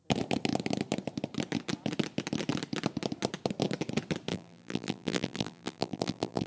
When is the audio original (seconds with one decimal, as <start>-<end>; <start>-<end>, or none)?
0.0-4.3